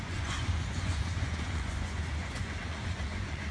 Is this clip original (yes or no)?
no